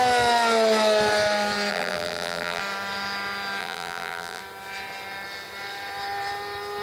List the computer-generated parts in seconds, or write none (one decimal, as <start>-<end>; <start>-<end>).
1.7-2.6; 3.6-4.4